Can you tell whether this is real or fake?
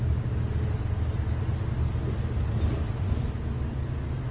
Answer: real